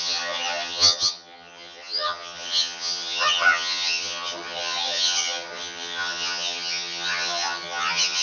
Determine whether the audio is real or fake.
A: fake